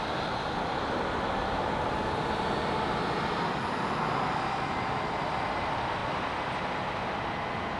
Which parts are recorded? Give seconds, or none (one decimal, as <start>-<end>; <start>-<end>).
0.0-7.8